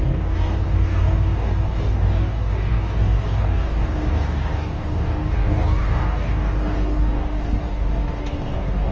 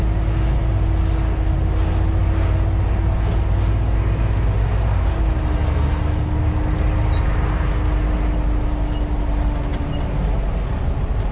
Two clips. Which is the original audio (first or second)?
second